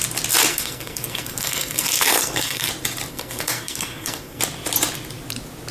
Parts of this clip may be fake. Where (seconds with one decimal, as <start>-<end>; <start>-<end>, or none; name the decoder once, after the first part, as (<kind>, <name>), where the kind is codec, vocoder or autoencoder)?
0.5-2.7 (codec, SNAC); 3.1-4.4